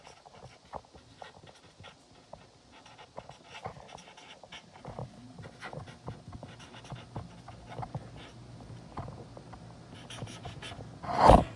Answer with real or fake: real